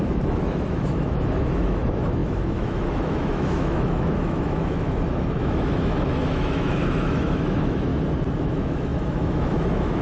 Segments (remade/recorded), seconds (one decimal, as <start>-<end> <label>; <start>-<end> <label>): 0.0-7.9 remade; 7.9-8.4 recorded; 8.4-10.0 remade